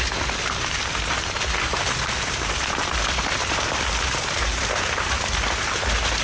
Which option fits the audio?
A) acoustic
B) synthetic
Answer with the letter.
A